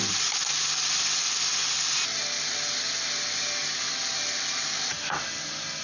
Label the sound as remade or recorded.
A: recorded